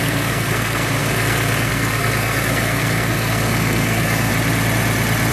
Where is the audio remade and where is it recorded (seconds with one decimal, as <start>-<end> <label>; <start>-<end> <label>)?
0.0-4.3 remade; 4.3-5.3 recorded